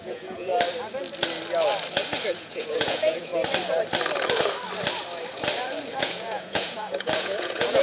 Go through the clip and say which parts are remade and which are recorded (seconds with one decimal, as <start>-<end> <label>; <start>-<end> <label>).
0.0-0.5 remade; 0.5-2.3 recorded; 2.3-3.3 remade; 3.3-6.0 recorded; 6.0-7.8 remade